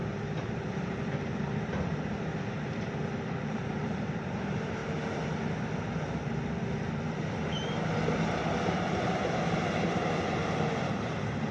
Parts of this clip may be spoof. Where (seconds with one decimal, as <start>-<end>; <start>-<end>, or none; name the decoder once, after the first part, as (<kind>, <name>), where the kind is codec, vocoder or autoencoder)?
0.0-4.8 (vocoder, BigVGAN v2); 8.8-11.5